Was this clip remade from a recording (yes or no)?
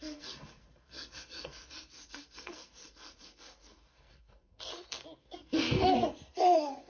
yes